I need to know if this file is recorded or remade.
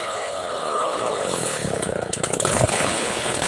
remade